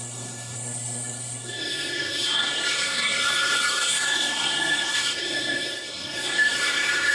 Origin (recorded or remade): remade